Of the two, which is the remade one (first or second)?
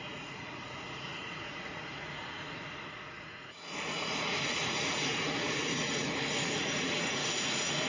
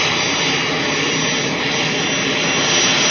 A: first